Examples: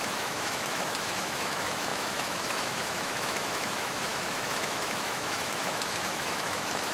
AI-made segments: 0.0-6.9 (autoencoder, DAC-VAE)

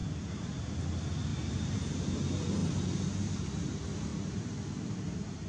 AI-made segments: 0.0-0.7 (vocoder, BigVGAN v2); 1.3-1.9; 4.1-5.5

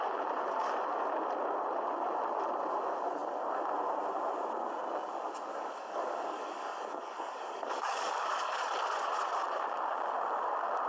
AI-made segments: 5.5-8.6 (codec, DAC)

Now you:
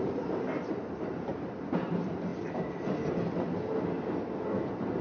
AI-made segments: 0.0-2.3 (vocoder, BigVGAN v2)

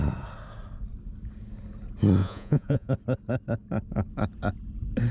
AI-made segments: 2.2-2.9 (vocoder, Vocos)

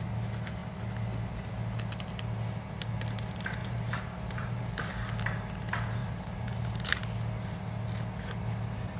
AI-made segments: 3.6-4.7 (vocoder, BigVGAN v2); 6.0-7.0

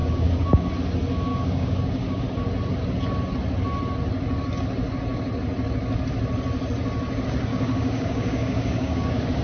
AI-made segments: 0.0-0.7 (codec, DAC); 1.3-2.2; 7.5-9.4

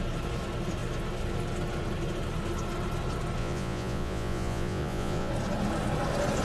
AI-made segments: 3.4-5.3 (vocoder, Vocos)